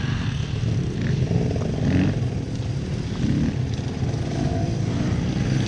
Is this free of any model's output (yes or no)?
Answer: yes